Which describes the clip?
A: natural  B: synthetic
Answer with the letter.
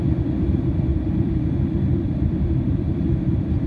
A